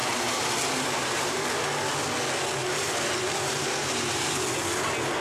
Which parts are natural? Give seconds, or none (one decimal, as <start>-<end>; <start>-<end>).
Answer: 1.4-2.6; 4.4-5.2